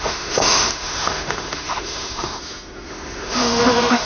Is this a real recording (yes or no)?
no